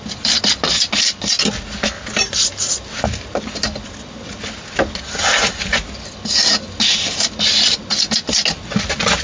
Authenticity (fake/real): real